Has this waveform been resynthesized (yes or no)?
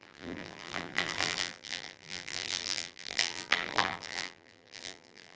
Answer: yes